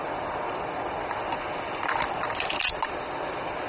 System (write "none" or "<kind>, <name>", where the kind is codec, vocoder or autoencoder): none